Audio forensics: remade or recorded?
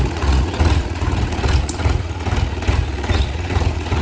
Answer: remade